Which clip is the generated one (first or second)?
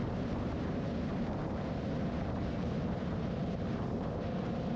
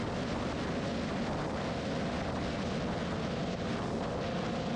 first